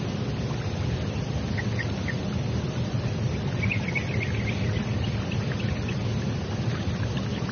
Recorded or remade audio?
recorded